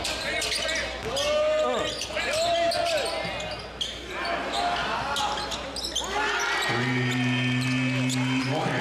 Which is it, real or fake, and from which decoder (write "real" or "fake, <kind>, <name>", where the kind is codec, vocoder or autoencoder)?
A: real